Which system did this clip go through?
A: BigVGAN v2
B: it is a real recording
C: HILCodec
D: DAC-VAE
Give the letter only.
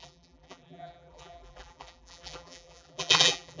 A